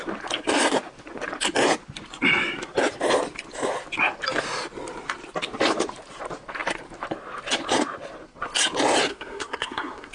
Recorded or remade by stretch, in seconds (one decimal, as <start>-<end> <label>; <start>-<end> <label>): 0.0-9.1 recorded; 9.1-10.1 remade